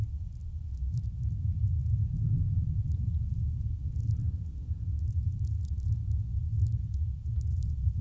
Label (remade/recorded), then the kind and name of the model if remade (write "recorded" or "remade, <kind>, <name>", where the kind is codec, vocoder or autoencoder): recorded